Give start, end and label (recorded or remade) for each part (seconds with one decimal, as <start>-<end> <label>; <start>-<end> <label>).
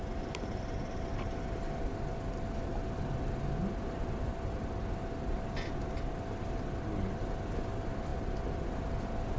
0.0-9.4 recorded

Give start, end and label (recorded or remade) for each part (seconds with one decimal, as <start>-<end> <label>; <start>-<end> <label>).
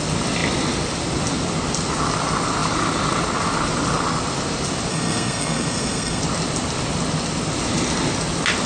0.0-4.9 recorded; 4.9-6.2 remade; 6.2-8.7 recorded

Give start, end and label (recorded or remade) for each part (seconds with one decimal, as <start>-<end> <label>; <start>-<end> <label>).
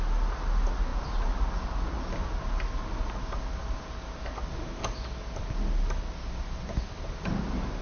0.0-7.8 recorded